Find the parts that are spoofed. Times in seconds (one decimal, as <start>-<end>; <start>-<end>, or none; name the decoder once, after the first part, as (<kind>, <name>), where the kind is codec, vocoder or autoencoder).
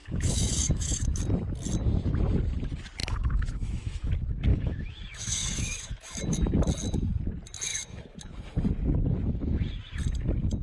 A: 0.0-1.2 (autoencoder, DAC-VAE); 3.0-4.1; 4.5-6.2; 7.7-8.3